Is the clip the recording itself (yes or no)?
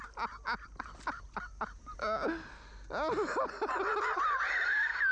yes